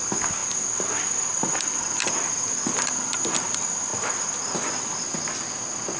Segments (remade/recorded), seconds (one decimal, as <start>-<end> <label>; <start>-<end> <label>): 0.0-6.0 recorded